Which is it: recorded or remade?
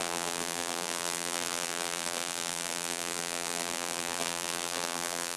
remade